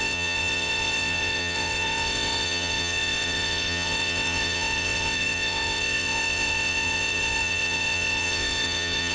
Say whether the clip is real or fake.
fake